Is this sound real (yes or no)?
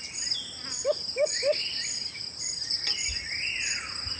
yes